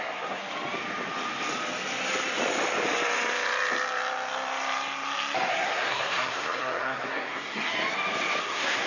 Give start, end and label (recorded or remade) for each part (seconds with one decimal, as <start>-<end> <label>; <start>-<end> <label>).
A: 0.0-0.4 remade; 0.4-5.5 recorded; 5.5-7.7 remade; 7.7-8.4 recorded; 8.4-8.9 remade